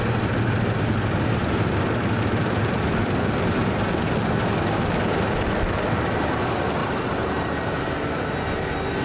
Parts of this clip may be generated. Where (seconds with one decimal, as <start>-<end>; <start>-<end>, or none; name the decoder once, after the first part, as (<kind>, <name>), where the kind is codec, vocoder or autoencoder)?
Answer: 1.4-6.1 (vocoder, BigVGAN v2); 6.8-7.9